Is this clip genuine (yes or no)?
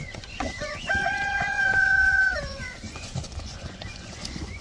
no